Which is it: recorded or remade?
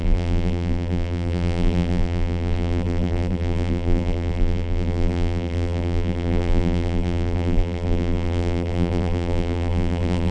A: remade